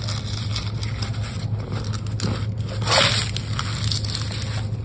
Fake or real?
real